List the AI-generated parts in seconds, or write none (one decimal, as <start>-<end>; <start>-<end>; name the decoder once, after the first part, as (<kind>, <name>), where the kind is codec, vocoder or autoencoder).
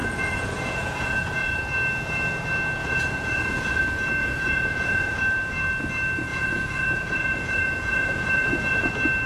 0.0-1.6 (vocoder, Vocos); 2.8-3.8; 4.2-5.2; 6.3-8.9